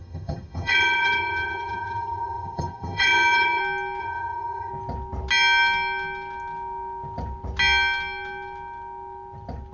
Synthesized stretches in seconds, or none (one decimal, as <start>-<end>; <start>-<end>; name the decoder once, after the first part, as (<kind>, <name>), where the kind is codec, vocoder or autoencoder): 0.0-3.6 (vocoder, HiFi-GAN); 4.0-4.7